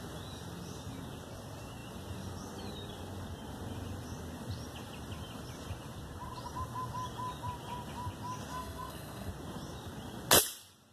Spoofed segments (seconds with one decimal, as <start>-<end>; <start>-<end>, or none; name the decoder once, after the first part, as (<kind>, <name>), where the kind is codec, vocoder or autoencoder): 8.5-9.3 (codec, SNAC)